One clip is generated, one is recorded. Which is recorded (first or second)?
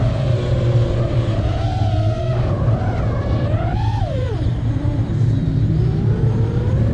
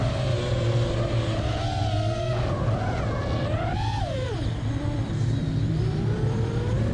second